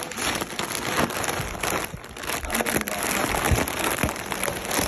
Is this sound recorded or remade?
recorded